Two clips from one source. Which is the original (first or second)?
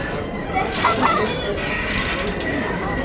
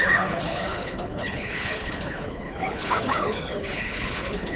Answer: first